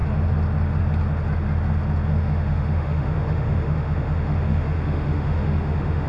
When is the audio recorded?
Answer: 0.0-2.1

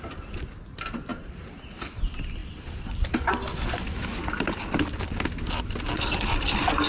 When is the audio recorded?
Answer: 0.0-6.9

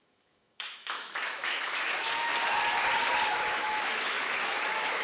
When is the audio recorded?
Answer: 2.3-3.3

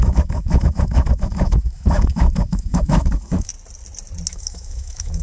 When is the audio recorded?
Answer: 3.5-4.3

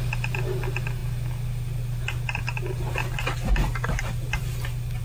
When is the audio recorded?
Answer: 0.0-5.0

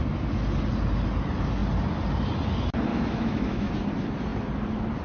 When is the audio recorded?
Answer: 0.0-2.9; 3.7-5.0

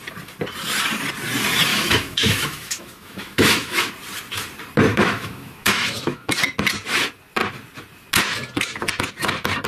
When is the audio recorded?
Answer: 0.0-1.7; 3.9-4.9; 6.3-9.7